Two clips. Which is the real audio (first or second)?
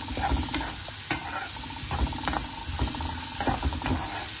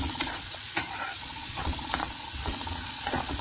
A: first